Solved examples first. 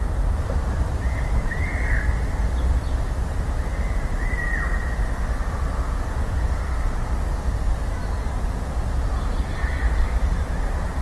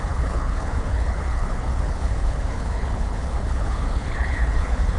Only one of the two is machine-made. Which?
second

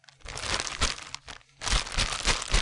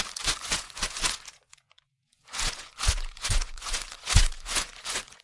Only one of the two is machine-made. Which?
second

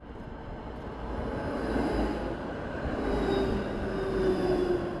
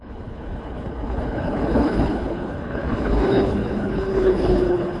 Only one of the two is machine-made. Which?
second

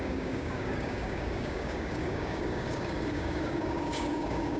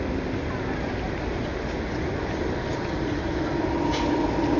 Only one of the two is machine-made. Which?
first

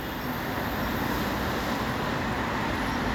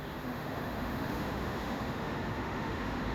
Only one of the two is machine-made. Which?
second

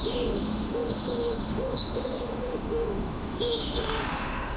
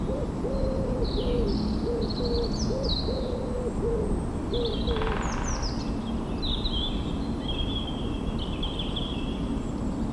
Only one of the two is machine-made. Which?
first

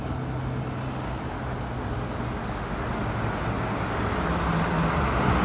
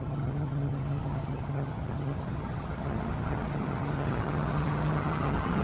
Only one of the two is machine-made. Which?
second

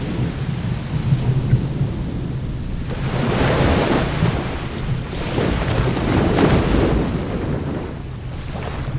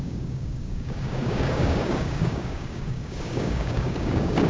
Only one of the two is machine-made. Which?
second